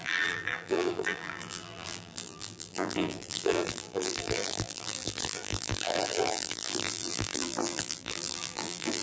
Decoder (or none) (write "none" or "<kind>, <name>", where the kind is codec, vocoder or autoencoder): vocoder, BigVGAN v2